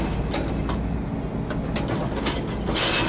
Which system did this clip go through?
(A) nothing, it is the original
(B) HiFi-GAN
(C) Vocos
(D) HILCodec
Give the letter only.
A